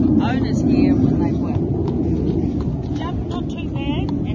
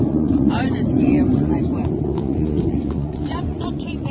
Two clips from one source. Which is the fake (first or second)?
second